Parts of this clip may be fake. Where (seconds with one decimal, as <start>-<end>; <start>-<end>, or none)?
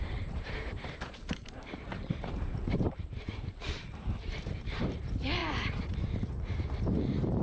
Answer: 0.0-7.4